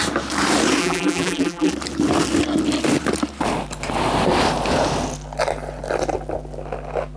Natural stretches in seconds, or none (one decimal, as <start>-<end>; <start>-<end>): 0.0-0.8; 1.7-7.2